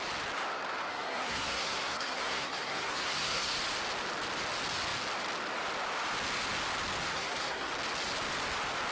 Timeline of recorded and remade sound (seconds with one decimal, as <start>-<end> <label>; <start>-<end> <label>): 0.0-0.9 recorded; 0.9-3.5 remade; 3.5-7.1 recorded; 7.1-7.7 remade; 7.7-8.9 recorded